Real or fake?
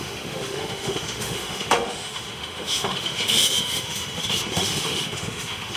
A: fake